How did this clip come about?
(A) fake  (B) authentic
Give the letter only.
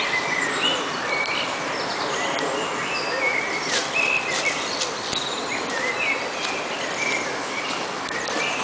B